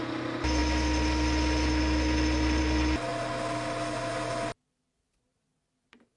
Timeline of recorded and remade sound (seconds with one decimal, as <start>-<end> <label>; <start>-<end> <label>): 0.0-6.2 recorded

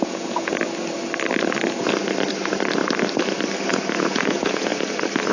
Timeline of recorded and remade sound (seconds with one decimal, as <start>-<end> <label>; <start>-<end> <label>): 0.0-0.5 remade; 0.5-3.7 recorded; 3.7-4.7 remade; 4.7-5.3 recorded

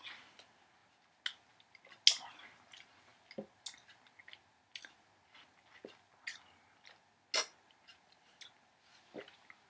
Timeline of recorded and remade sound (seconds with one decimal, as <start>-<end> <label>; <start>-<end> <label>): 0.0-9.7 recorded

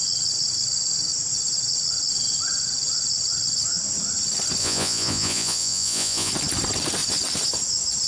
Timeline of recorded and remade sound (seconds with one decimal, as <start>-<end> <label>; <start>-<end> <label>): 0.0-4.6 recorded; 4.6-6.3 remade; 6.3-8.1 recorded

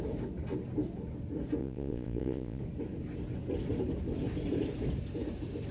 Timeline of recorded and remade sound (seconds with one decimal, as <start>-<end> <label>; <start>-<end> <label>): 0.0-1.6 recorded; 1.6-2.6 remade; 2.6-5.7 recorded

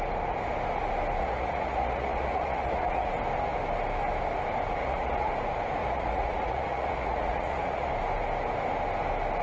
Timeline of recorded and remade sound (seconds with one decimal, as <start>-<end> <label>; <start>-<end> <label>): 0.0-1.2 recorded; 1.2-3.1 remade; 3.1-4.8 recorded; 4.8-5.3 remade; 5.3-5.8 recorded; 5.8-7.9 remade; 7.9-9.4 recorded

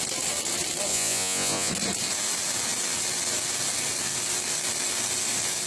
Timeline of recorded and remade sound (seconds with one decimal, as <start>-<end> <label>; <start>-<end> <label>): 0.0-0.9 recorded; 0.9-1.7 remade; 1.7-5.7 recorded